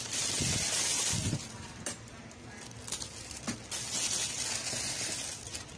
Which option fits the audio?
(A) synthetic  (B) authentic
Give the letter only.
B